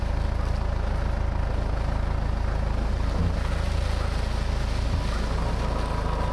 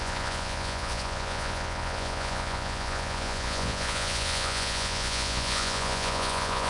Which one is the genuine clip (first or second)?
first